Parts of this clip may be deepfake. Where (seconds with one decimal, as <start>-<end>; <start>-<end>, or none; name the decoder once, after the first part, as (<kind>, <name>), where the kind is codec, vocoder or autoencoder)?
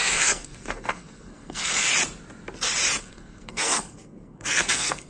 0.0-1.9 (codec, SNAC); 3.0-5.1